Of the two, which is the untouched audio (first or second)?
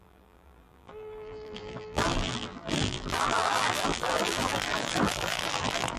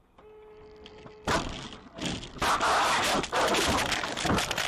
second